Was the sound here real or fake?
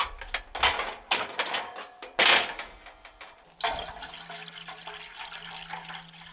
real